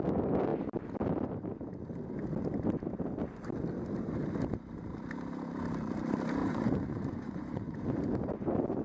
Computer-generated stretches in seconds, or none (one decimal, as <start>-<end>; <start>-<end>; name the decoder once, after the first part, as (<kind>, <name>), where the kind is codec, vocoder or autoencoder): 6.4-7.8 (vocoder, Vocos)